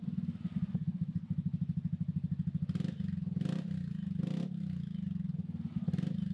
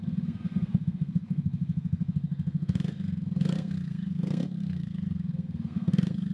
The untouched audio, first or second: first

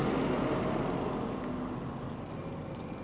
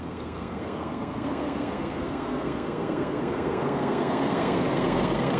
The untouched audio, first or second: first